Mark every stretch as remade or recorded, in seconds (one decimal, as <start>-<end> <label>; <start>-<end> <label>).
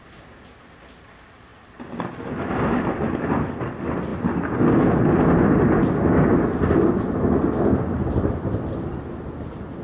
0.0-9.8 recorded